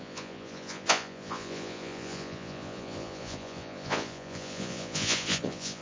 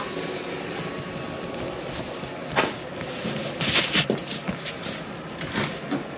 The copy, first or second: first